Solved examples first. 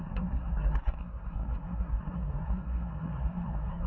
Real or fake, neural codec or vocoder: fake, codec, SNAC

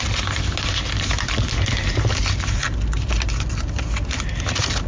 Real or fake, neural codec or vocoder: real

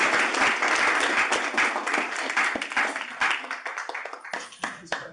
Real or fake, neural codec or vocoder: real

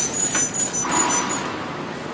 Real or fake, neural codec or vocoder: real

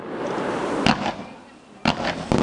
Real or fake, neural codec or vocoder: real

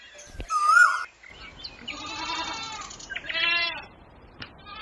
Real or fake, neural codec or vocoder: real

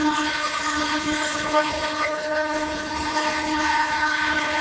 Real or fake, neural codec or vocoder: fake, codec, HILCodec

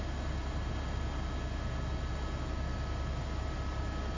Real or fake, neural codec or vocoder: real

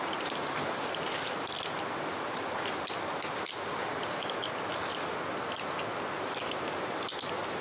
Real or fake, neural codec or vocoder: real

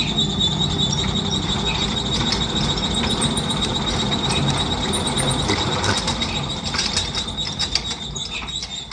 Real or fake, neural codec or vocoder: real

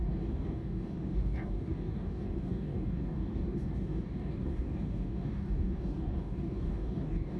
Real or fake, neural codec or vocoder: fake, codec, DAC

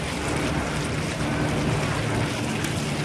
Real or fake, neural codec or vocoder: real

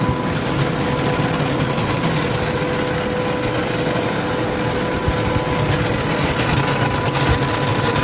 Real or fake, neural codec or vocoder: real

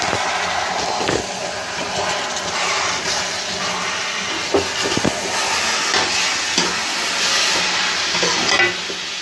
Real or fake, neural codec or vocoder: real